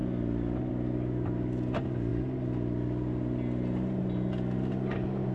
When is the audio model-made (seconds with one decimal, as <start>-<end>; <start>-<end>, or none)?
none